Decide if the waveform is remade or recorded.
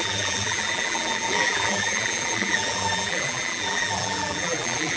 remade